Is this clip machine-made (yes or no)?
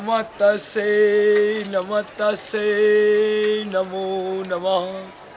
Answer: no